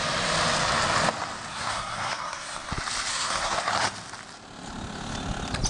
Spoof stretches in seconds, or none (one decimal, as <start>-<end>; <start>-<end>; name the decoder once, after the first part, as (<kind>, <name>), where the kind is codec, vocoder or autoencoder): 1.5-2.7 (codec, SNAC); 3.1-3.7